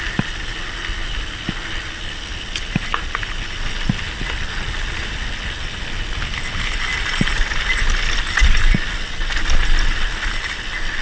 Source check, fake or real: real